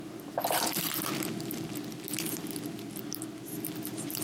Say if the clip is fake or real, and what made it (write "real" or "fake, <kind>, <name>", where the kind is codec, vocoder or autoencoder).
real